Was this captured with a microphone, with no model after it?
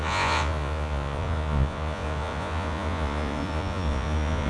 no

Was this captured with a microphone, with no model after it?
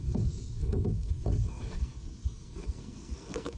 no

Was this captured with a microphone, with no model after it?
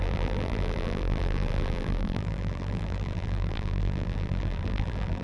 no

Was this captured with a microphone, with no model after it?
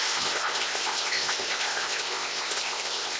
no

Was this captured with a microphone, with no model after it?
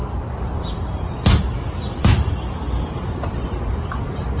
yes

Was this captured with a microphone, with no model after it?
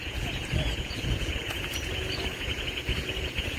no